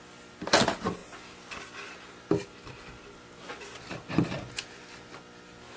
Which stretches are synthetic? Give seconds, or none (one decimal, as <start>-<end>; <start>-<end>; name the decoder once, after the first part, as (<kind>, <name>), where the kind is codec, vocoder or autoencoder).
none